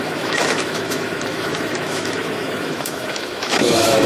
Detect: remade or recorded remade